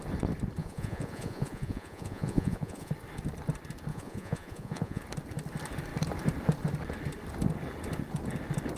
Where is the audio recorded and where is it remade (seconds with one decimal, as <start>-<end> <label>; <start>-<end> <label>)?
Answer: 0.0-0.6 recorded; 0.6-2.9 remade; 2.9-3.9 recorded; 3.9-5.0 remade; 5.0-8.8 recorded